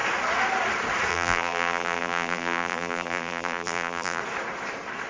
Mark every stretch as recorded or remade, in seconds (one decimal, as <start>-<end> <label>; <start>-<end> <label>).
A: 0.0-1.1 recorded; 1.1-4.2 remade; 4.2-5.1 recorded